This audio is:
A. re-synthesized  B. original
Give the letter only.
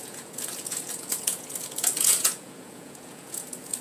A